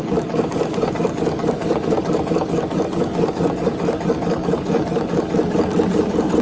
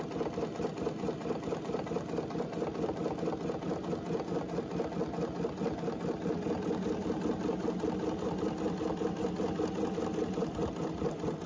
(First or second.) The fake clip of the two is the first